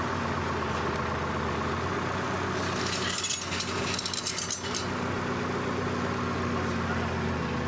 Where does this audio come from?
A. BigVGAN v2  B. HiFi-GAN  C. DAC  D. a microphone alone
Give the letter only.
D